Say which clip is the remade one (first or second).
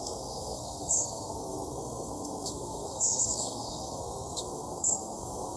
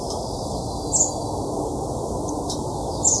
first